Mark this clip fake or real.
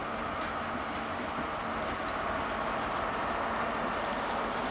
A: real